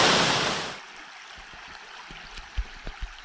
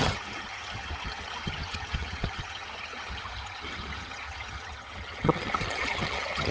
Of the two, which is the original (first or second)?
first